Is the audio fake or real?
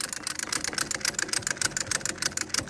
real